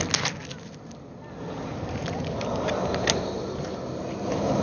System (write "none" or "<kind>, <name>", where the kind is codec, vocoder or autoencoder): none